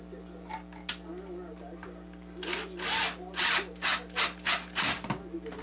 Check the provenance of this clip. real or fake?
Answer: real